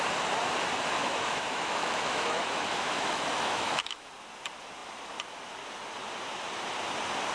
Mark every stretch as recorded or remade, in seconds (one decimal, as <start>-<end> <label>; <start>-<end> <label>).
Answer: 0.0-1.0 recorded; 1.0-4.1 remade; 4.1-7.3 recorded